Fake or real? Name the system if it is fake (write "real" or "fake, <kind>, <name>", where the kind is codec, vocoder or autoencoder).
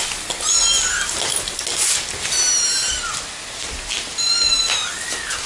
real